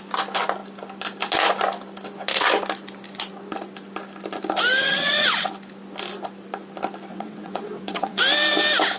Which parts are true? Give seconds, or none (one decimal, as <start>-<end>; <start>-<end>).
0.0-4.8; 5.5-7.1; 8.2-9.0